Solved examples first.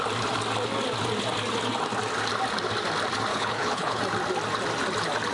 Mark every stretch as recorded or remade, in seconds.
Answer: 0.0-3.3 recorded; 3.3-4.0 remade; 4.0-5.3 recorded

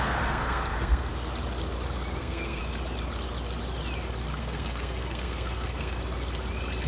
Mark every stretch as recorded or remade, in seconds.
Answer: 0.0-1.1 remade; 1.1-2.2 recorded; 2.2-2.6 remade; 2.6-4.4 recorded; 4.4-6.0 remade; 6.0-6.9 recorded

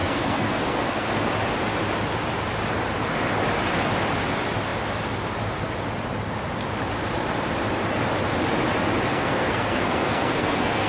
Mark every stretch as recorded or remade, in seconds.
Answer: 0.0-1.1 remade; 1.1-9.1 recorded; 9.1-10.9 remade

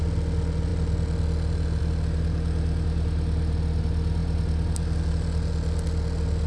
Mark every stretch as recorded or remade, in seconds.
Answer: 0.0-6.5 recorded

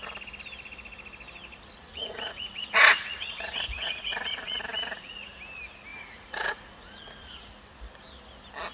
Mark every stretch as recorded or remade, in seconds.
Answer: 0.0-1.8 recorded; 1.8-5.3 remade; 5.3-5.9 recorded; 5.9-7.5 remade; 7.5-8.7 recorded